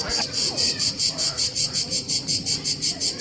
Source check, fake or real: fake